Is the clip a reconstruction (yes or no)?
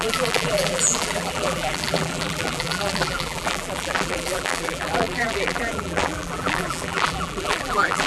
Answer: yes